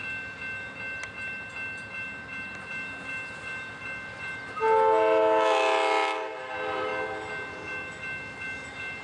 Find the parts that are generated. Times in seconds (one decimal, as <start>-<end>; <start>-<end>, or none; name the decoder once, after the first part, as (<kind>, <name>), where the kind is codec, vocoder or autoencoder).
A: none

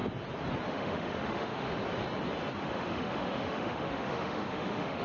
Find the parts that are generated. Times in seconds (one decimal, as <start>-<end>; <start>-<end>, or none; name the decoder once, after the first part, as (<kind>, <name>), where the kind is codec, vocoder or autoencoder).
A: 0.7-1.7 (autoencoder, DAC-VAE); 2.6-5.0

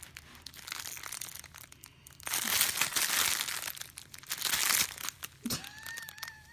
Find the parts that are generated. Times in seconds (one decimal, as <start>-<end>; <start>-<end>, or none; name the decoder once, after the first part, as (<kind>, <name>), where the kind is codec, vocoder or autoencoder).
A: none

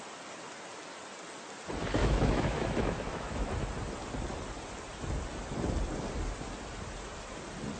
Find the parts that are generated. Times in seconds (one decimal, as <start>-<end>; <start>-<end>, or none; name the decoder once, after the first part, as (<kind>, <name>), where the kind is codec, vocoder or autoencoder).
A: 2.0-3.5 (autoencoder, DAC-VAE)

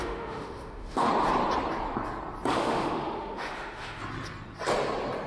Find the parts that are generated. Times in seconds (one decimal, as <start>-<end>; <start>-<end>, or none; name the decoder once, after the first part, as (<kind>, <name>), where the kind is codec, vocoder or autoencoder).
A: 0.0-1.1 (autoencoder, DAC-VAE); 2.5-4.0